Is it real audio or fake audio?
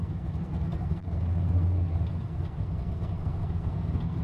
fake